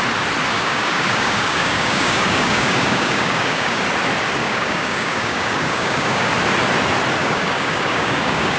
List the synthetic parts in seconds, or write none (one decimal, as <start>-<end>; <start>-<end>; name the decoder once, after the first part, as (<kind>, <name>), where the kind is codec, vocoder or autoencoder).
0.5-3.8 (codec, DAC); 4.4-6.3; 7.2-8.6